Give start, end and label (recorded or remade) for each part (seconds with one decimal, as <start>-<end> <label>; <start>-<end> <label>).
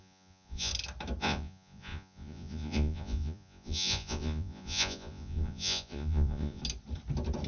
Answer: 0.0-0.7 remade; 0.7-1.2 recorded; 1.2-6.6 remade; 6.6-7.5 recorded